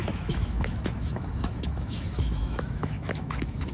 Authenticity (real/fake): fake